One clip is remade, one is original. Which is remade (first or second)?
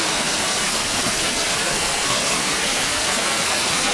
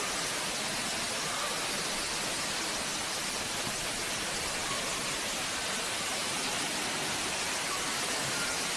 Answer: first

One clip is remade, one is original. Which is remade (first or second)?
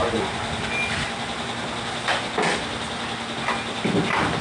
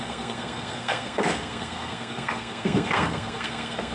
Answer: second